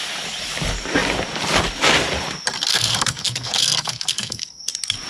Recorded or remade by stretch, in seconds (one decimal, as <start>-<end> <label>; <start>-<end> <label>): 0.0-2.7 recorded; 2.7-4.6 remade; 4.6-5.1 recorded